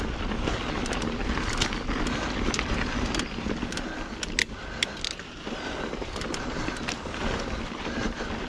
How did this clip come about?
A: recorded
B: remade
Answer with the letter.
A